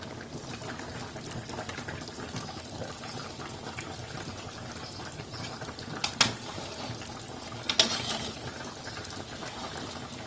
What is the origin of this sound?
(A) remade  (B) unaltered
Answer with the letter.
B